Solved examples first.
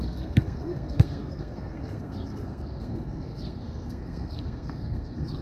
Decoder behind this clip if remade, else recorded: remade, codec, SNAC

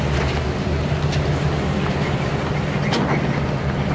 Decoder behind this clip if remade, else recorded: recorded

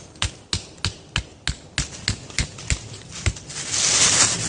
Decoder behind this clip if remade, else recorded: recorded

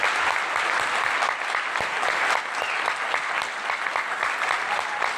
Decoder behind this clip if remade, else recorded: recorded